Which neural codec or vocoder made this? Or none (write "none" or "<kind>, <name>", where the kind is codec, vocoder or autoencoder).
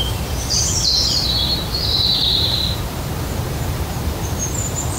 vocoder, BigVGAN v2